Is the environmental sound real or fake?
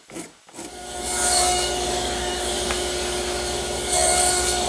fake